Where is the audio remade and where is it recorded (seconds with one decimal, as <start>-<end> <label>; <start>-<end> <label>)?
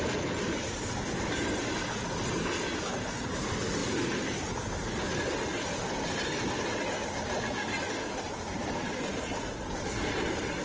0.0-10.6 recorded